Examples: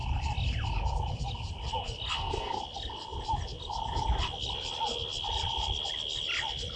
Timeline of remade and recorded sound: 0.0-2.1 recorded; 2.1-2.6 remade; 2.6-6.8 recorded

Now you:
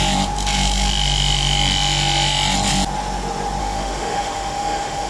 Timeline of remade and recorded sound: 0.0-3.6 recorded; 3.6-5.1 remade

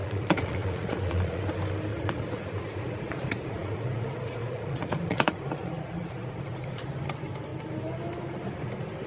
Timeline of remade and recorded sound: 0.0-1.4 remade; 1.4-1.9 recorded; 1.9-6.9 remade; 6.9-9.1 recorded

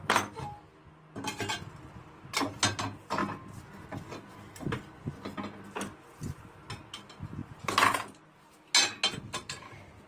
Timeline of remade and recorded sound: 0.0-10.1 recorded

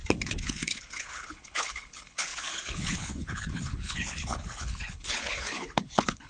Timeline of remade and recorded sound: 0.0-6.3 remade

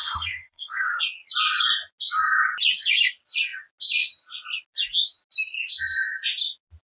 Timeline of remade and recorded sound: 0.0-1.0 remade; 1.0-6.9 recorded